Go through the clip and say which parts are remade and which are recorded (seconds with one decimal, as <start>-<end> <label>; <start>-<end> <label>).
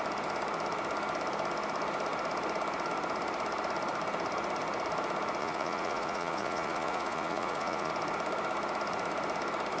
0.0-5.4 recorded; 5.4-7.9 remade; 7.9-9.8 recorded